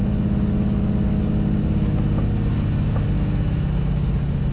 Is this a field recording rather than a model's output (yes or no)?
yes